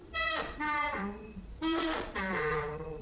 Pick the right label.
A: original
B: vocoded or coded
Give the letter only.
B